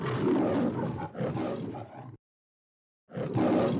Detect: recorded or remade recorded